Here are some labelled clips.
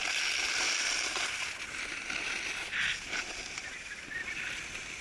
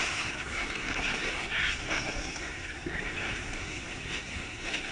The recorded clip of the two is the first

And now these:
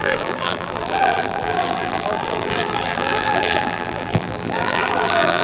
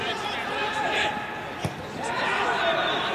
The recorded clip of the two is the second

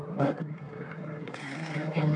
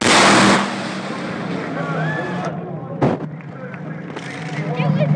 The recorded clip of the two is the second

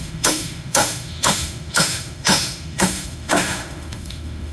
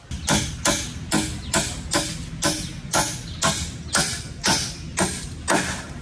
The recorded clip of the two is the second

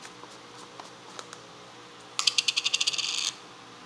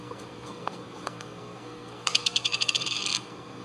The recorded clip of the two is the first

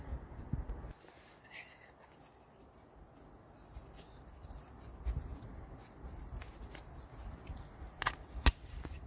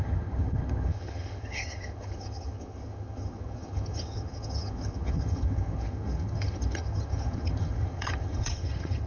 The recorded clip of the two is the first